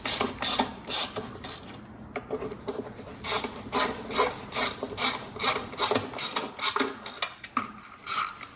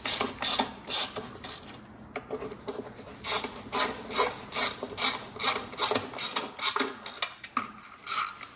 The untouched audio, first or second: second